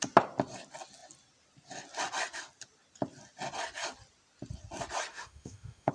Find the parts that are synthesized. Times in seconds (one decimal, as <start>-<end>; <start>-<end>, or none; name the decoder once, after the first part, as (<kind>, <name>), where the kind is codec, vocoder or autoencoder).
5.1-5.9 (autoencoder, DAC-VAE)